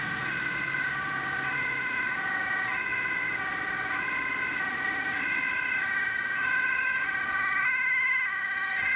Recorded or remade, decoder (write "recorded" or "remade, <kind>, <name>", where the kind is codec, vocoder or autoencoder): recorded